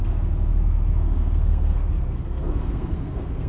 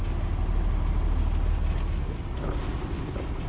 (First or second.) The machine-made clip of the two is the first